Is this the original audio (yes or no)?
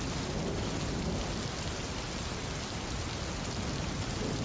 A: yes